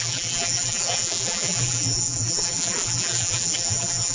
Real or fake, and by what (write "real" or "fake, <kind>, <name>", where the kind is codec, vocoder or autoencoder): fake, vocoder, BigVGAN v2